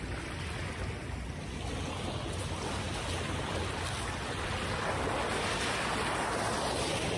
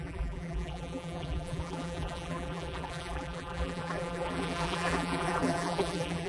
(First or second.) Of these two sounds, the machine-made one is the second